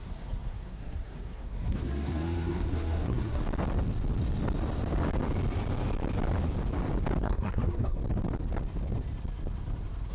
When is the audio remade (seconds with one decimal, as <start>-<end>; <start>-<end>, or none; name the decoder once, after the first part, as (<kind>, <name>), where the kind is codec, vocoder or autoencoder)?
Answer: 0.0-3.4 (codec, SNAC); 7.2-8.0